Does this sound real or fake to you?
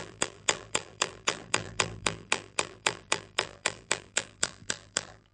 fake